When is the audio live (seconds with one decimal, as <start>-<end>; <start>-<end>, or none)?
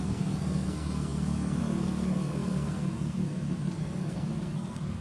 none